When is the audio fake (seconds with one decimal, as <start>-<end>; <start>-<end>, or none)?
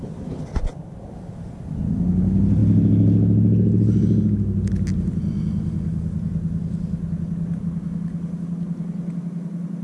none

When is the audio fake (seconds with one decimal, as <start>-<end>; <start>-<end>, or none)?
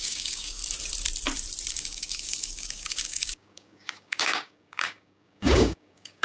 0.0-0.6; 1.7-6.2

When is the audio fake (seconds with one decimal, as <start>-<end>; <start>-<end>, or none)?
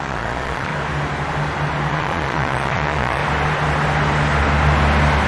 0.0-0.7; 1.9-3.2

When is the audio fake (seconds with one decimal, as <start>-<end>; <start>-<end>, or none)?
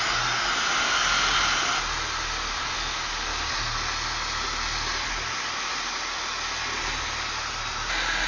none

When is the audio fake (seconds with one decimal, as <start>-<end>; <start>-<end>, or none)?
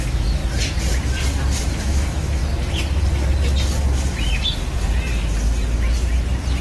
0.0-0.4; 1.7-2.4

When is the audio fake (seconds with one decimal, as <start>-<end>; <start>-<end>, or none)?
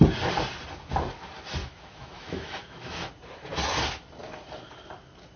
1.6-3.1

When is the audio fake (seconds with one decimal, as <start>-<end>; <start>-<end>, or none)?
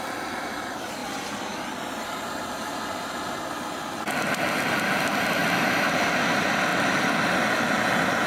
1.0-4.4; 5.4-6.0; 6.7-7.4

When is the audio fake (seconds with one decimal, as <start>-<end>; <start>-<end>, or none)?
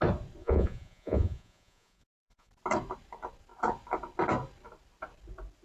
0.4-2.5